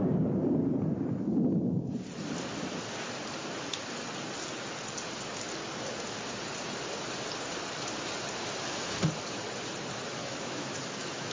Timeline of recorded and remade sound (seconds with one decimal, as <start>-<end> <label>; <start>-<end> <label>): 0.0-10.2 recorded; 10.2-11.3 remade